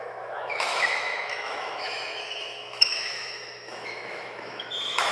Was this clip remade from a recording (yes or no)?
yes